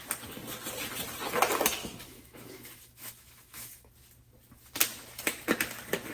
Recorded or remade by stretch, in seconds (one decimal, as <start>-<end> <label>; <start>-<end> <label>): 0.0-1.8 recorded; 1.8-3.9 remade; 3.9-6.1 recorded

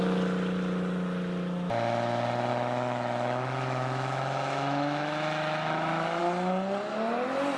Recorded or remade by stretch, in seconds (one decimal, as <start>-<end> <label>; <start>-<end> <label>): 0.0-2.5 recorded; 2.5-6.2 remade; 6.2-7.6 recorded